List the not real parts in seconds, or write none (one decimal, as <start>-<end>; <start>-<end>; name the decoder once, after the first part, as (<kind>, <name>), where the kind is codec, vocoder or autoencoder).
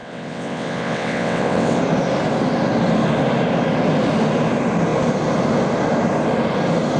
0.0-1.8 (vocoder, WaveNeXt)